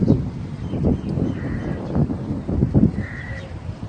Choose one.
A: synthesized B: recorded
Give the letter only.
A